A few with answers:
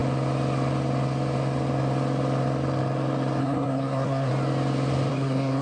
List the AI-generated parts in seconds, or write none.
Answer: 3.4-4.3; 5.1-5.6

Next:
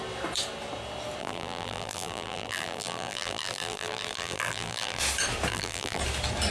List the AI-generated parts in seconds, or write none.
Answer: 1.2-5.0; 5.5-6.0

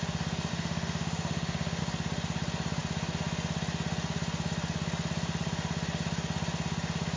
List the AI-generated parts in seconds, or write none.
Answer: 0.5-1.8

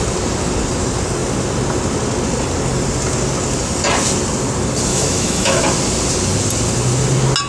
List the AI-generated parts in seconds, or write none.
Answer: 4.9-5.6